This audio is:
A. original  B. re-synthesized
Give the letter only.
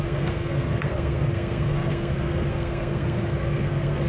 B